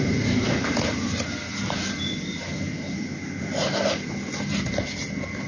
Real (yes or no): no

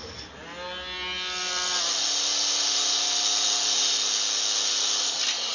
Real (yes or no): yes